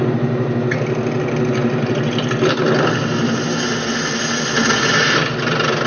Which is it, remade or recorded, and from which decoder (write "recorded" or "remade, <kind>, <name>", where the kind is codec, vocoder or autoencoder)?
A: recorded